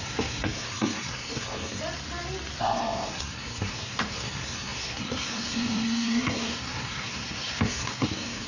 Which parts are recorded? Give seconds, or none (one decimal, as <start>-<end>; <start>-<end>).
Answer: 1.8-2.6